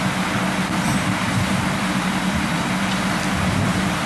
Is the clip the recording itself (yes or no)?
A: yes